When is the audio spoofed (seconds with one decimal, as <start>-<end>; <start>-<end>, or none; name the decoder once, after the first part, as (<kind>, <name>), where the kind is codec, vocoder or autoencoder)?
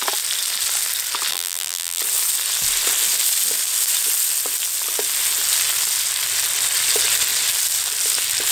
1.3-2.0 (vocoder, BigVGAN v2)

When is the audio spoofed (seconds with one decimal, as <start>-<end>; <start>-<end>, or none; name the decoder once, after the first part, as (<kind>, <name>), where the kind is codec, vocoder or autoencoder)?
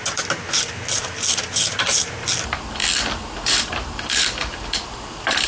0.0-2.8 (vocoder, BigVGAN v2); 3.5-5.5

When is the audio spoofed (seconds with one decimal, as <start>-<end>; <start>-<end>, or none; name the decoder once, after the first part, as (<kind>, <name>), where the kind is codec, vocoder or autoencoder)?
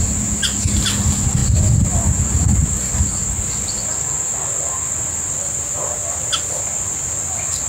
none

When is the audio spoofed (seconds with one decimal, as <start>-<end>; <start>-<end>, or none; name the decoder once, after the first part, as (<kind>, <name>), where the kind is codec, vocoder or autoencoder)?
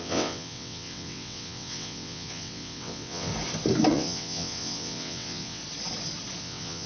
0.0-3.3 (vocoder, WaveNeXt); 3.9-5.6; 6.4-6.9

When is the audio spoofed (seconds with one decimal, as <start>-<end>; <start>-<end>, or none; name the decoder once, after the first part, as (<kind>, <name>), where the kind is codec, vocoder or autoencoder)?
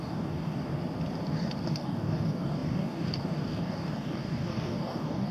0.0-0.7 (codec, DAC); 1.7-5.3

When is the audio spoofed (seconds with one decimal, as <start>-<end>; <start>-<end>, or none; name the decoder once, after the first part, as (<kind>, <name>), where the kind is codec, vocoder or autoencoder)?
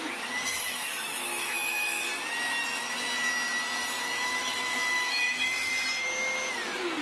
0.0-2.1 (autoencoder, DAC-VAE); 4.0-5.7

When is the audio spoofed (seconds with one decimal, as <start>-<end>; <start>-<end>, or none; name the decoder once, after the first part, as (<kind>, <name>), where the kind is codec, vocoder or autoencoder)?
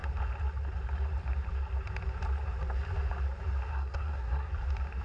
3.7-4.5 (codec, SNAC)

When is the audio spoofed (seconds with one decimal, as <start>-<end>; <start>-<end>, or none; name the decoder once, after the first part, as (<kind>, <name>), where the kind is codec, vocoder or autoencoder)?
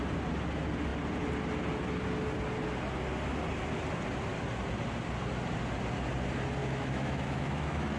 6.6-8.0 (autoencoder, DAC-VAE)